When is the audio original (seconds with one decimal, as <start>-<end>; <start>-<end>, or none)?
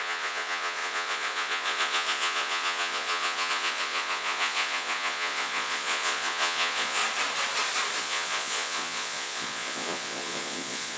7.0-8.0